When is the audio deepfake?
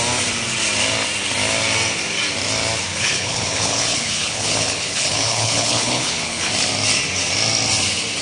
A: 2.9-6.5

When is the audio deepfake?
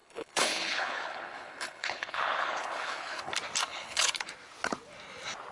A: 0.0-3.3; 3.7-4.3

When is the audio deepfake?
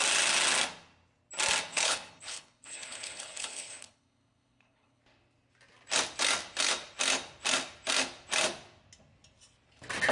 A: 1.7-5.0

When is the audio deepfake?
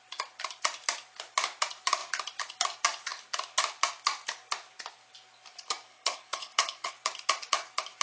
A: 5.9-6.9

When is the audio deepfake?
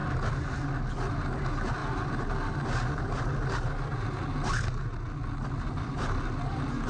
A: none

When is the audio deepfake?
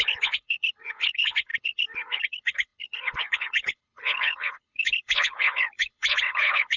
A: 0.0-6.8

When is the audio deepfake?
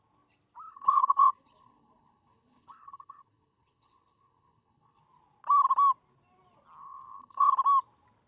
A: 0.7-5.0; 6.8-7.5